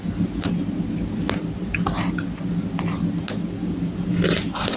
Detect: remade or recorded recorded